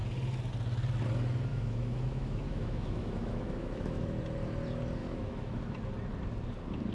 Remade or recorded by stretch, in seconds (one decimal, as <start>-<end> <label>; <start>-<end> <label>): 0.0-1.5 recorded; 1.5-4.2 remade; 4.2-5.0 recorded; 5.0-5.6 remade; 5.6-6.9 recorded